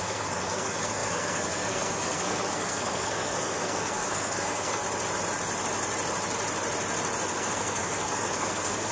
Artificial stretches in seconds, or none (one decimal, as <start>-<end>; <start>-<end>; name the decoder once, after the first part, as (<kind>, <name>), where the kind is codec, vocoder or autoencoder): 0.0-4.8 (codec, SNAC); 7.3-8.9